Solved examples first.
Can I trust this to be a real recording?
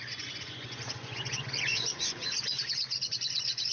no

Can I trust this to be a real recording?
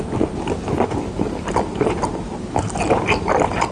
yes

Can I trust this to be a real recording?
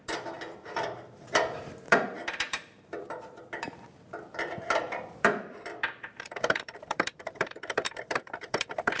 no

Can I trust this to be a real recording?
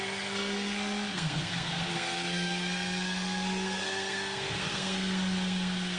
no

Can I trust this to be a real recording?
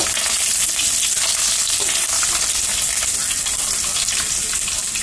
yes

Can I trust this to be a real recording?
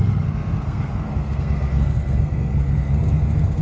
no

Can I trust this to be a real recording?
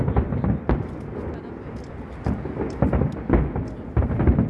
yes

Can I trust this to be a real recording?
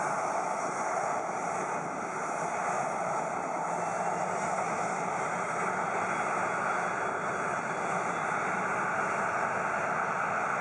yes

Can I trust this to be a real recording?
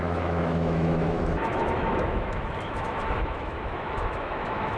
no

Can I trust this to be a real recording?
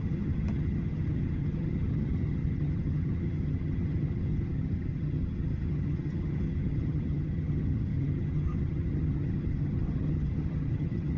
no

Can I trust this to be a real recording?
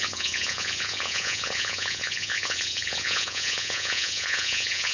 no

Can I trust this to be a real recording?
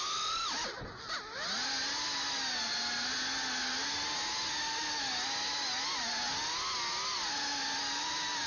yes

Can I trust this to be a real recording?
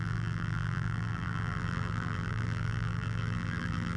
no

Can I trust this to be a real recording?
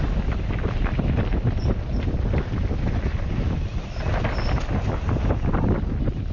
yes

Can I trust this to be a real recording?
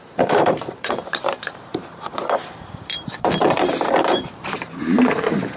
no